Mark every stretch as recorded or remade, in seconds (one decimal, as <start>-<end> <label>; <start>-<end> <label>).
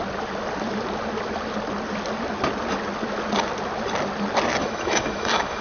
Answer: 0.0-4.6 recorded; 4.6-5.6 remade